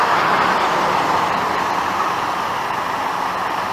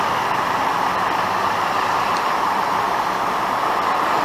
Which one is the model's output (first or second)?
second